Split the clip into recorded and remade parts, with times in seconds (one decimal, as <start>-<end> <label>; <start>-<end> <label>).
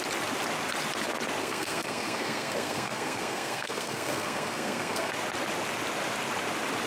0.0-1.4 recorded; 1.4-5.1 remade; 5.1-6.9 recorded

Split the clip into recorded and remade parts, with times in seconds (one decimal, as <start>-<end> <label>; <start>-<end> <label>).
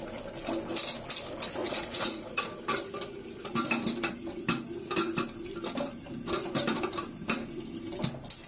0.0-1.6 recorded; 1.6-2.4 remade; 2.4-8.5 recorded